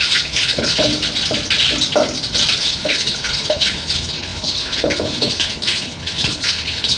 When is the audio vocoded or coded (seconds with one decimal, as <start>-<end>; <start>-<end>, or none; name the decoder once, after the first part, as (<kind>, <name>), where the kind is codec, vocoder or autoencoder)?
0.0-0.9 (codec, HILCodec); 2.6-7.0